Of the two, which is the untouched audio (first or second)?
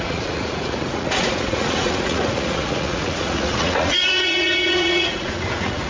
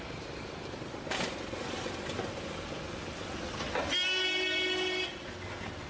second